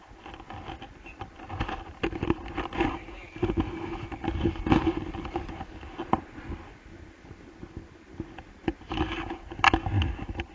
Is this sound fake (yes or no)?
no